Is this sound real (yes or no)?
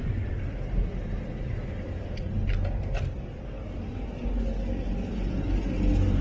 yes